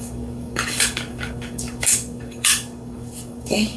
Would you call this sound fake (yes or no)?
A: yes